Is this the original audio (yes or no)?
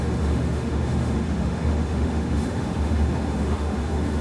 no